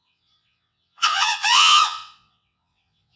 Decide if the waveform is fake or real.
fake